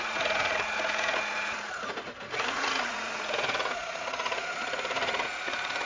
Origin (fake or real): fake